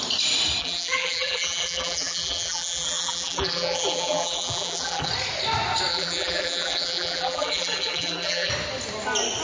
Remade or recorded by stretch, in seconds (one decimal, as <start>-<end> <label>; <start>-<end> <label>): 0.0-0.6 recorded; 0.6-5.1 remade; 5.1-5.9 recorded; 5.9-8.5 remade; 8.5-9.4 recorded